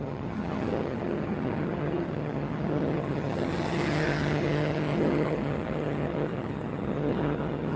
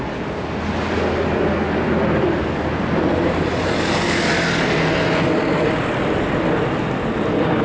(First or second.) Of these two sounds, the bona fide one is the second